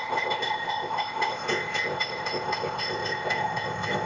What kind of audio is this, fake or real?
fake